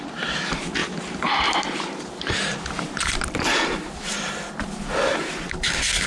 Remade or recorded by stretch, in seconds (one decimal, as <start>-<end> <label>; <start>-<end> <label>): 0.0-6.1 recorded